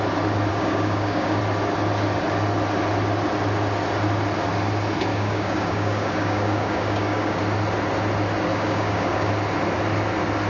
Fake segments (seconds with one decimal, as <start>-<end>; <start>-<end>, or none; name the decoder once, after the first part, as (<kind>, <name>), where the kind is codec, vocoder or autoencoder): 0.5-1.4 (codec, DAC); 5.1-7.4; 8.5-9.3